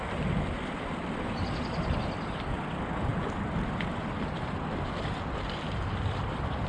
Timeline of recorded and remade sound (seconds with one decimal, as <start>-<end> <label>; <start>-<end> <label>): 0.0-6.7 recorded